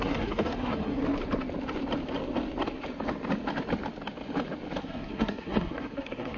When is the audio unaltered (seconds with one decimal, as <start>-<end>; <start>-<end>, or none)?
1.0-4.8